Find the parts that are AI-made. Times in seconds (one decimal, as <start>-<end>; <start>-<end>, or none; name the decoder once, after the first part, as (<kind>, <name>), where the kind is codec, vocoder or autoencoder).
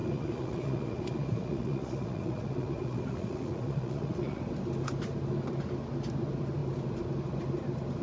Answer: 0.0-4.4 (vocoder, Vocos)